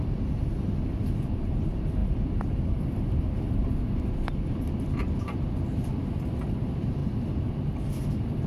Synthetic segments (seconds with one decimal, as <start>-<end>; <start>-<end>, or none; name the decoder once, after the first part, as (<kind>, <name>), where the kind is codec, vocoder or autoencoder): 0.0-7.0 (vocoder, BigVGAN v2); 7.8-8.5